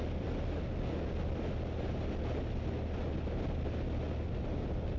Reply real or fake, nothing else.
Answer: real